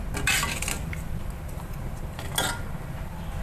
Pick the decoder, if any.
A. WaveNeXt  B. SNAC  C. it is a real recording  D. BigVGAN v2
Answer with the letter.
C